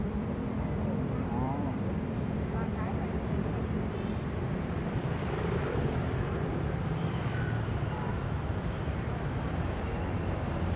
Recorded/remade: remade